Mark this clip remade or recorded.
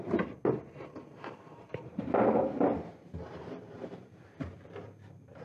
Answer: remade